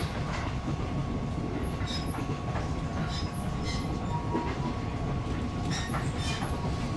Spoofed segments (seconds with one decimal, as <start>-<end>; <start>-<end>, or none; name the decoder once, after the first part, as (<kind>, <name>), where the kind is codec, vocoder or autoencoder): none